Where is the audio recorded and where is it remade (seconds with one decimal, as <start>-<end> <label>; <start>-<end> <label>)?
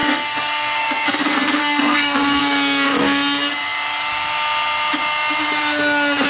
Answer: 0.0-2.4 remade; 2.4-6.3 recorded